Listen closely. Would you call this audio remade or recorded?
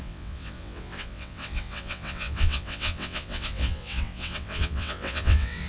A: remade